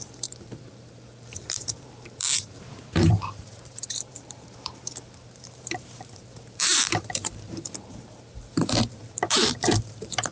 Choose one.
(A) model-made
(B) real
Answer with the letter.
A